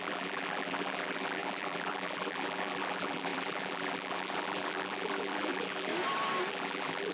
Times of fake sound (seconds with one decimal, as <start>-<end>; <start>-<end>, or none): 0.0-5.9; 6.5-7.1